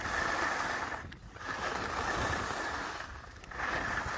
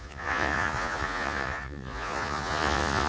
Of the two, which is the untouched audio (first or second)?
first